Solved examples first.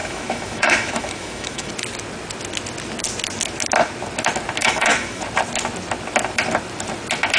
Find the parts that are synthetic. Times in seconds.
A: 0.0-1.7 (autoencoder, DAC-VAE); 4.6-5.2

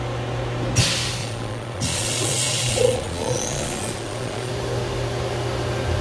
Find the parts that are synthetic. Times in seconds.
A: 1.2-4.5 (vocoder, Vocos)

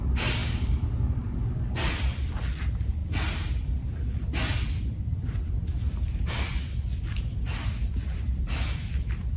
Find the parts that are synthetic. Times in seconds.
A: 0.4-1.9 (codec, DAC)

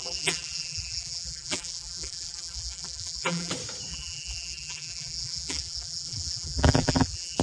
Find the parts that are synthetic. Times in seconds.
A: 0.0-3.5 (vocoder, BigVGAN v2); 3.9-7.4